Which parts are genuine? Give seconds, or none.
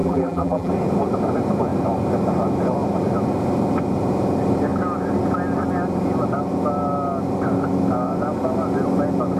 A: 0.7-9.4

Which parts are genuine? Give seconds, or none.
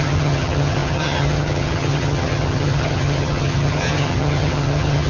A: none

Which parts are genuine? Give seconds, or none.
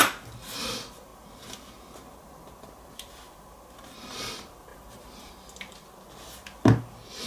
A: 0.0-4.7; 5.3-7.3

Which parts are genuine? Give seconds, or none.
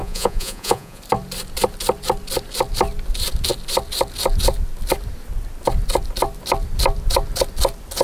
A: 1.0-8.0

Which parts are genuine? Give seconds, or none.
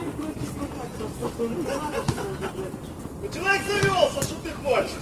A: 0.0-5.0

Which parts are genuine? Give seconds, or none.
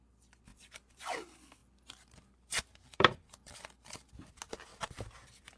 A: 0.0-0.5; 1.0-1.6; 4.1-4.7